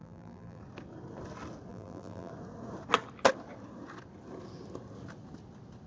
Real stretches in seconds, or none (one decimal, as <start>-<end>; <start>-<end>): 0.6-1.7; 2.3-5.9